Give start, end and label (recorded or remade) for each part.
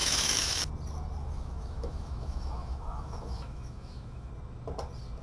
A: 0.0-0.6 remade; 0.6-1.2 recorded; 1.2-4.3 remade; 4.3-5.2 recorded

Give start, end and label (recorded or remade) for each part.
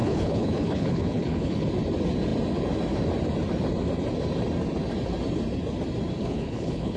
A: 0.0-1.7 remade; 1.7-6.2 recorded; 6.2-7.0 remade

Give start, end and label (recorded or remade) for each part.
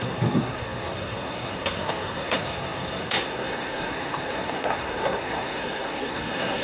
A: 0.0-6.6 remade